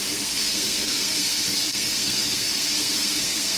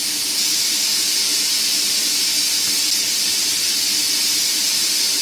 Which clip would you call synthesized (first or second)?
first